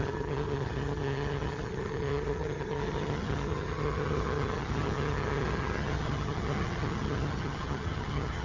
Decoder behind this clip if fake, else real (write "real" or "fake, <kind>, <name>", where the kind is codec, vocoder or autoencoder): fake, vocoder, HiFi-GAN